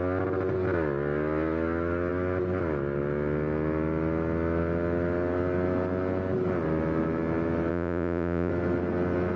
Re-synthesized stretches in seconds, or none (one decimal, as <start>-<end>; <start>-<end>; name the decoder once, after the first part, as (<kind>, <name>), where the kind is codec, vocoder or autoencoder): 7.7-8.5 (vocoder, Vocos)